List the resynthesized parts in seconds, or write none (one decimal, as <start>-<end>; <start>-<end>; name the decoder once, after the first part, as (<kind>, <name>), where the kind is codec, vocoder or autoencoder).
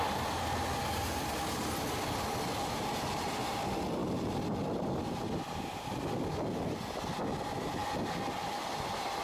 none